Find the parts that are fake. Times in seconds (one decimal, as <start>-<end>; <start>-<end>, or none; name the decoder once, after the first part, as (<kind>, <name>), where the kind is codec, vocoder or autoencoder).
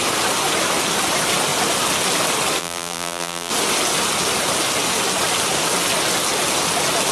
2.6-3.5 (vocoder, BigVGAN v2)